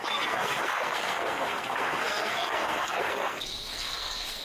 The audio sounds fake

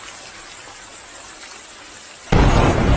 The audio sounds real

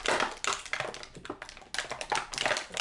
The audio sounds real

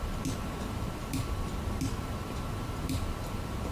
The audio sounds real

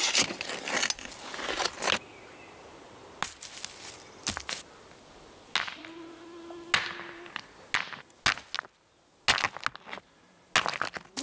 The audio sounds real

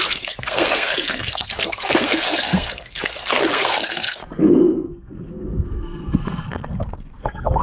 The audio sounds fake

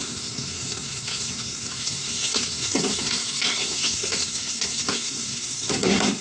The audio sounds fake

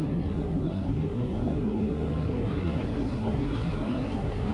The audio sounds fake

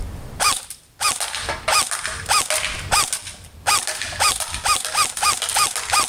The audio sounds real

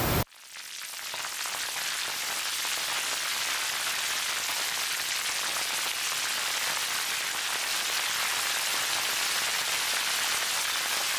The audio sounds real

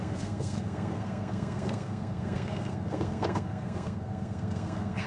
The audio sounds fake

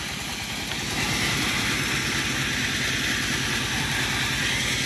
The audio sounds real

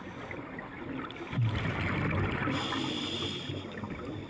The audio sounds real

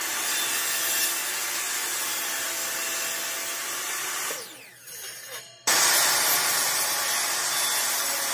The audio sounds real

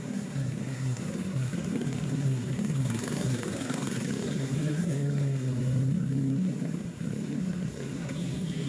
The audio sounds fake